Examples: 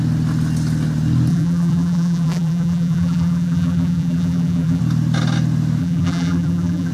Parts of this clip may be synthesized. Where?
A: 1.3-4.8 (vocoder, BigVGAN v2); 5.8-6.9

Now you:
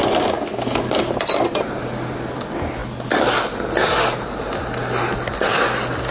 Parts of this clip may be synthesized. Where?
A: none

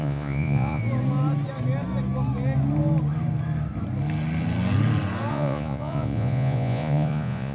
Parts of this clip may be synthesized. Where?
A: 0.0-0.8 (vocoder, Vocos); 5.3-7.5

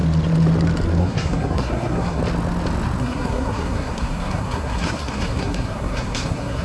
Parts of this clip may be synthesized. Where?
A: 1.0-2.2 (codec, SNAC); 3.0-6.6

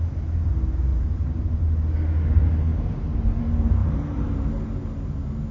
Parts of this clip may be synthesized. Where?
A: 0.9-1.6 (vocoder, BigVGAN v2); 2.7-3.4; 3.8-4.5

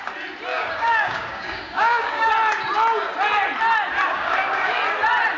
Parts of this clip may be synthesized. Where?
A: 0.5-2.3 (codec, DAC); 4.1-4.8